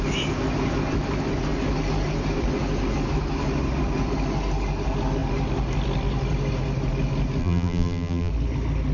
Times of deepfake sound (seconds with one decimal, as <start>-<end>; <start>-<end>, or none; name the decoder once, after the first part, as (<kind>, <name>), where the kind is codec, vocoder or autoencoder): 7.4-8.3 (vocoder, BigVGAN v2)